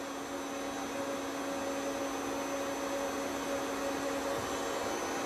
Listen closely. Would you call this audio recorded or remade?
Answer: recorded